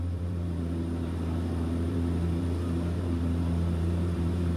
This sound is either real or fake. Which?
fake